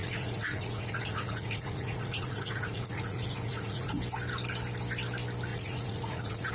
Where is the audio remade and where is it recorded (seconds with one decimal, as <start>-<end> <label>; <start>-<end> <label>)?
0.0-3.9 remade; 3.9-5.5 recorded; 5.5-6.5 remade

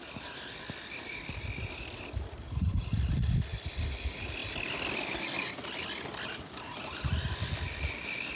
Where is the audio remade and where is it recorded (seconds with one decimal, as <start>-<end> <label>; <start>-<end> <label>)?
0.0-8.4 recorded

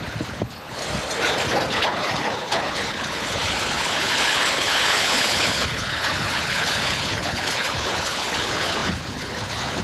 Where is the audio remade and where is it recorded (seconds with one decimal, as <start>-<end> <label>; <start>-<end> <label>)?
0.0-0.8 remade; 0.8-1.7 recorded; 1.7-9.8 remade

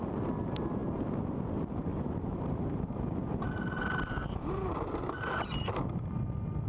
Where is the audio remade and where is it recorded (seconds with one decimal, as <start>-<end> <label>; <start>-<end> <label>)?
0.0-1.9 recorded; 1.9-5.9 remade; 5.9-6.7 recorded

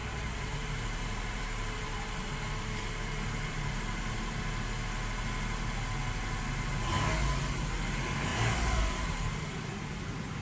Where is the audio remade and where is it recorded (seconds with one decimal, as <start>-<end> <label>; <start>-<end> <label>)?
0.0-4.4 remade; 4.4-8.3 recorded; 8.3-10.4 remade

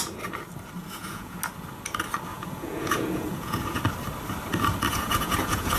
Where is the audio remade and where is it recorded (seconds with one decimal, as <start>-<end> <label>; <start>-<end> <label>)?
0.0-0.8 recorded; 0.8-1.4 remade; 1.4-2.3 recorded; 2.3-3.8 remade; 3.8-4.9 recorded; 4.9-5.8 remade

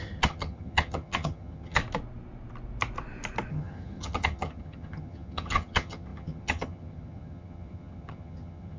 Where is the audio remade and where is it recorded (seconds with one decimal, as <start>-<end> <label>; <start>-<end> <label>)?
0.0-1.8 remade; 1.8-3.5 recorded; 3.5-8.8 remade